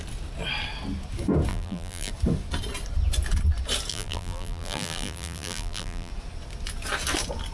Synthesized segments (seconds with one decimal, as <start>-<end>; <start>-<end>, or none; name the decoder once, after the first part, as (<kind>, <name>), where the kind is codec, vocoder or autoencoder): 1.5-2.1 (vocoder, BigVGAN v2); 3.9-6.1